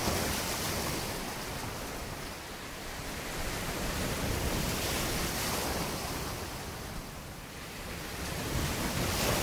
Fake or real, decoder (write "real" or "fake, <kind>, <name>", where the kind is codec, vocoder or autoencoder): real